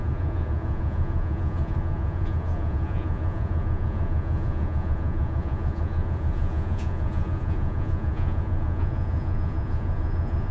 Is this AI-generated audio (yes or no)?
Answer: yes